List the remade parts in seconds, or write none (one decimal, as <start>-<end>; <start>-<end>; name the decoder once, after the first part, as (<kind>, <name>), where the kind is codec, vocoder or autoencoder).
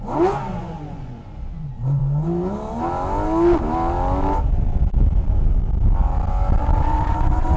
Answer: 0.0-2.0 (vocoder, Vocos); 6.6-7.6